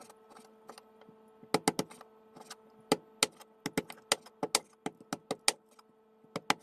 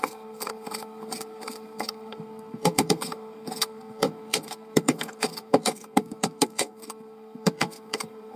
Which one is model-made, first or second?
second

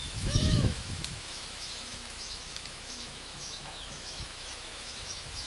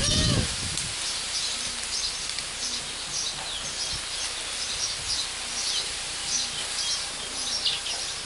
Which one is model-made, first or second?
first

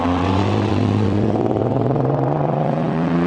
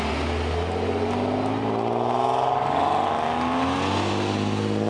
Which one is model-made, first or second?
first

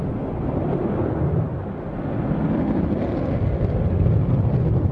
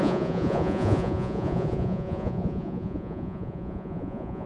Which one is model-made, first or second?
second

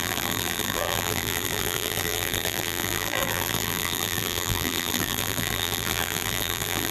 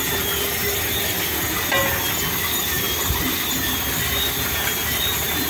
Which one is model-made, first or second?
first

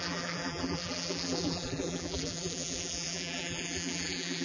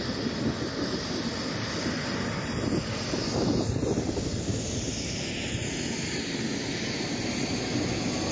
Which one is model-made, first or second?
first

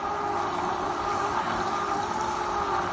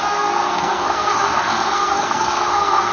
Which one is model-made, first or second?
second